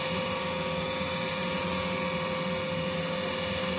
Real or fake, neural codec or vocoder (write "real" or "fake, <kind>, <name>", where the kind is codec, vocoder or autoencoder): real